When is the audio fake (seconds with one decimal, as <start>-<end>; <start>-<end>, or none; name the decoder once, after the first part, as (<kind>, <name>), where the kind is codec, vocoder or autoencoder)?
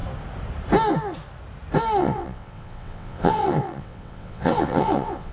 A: 2.0-5.3 (vocoder, WaveNeXt)